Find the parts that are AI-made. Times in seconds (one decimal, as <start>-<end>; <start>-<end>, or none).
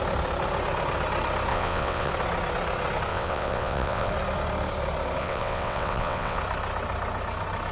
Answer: 1.5-2.1; 3.1-4.1; 5.2-6.4